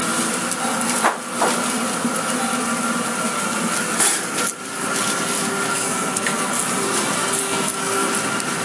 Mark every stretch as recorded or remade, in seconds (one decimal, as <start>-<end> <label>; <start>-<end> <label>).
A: 0.0-5.7 recorded; 5.7-6.5 remade; 6.5-7.4 recorded; 7.4-8.1 remade; 8.1-8.6 recorded